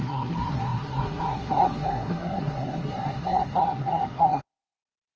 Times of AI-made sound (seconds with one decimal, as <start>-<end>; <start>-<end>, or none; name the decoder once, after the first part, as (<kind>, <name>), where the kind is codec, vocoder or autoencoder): 0.0-5.2 (codec, SNAC)